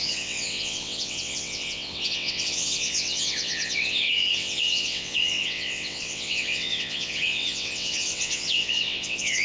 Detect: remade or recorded remade